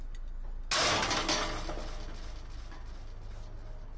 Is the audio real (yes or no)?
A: yes